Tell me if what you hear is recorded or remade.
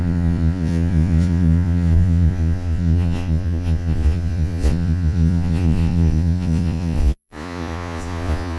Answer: remade